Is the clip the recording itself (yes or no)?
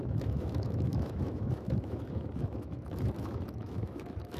no